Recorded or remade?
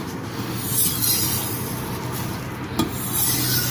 recorded